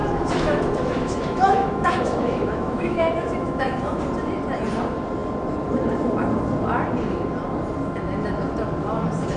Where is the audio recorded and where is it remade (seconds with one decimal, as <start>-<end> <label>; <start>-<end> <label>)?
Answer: 0.0-4.0 remade; 4.0-9.4 recorded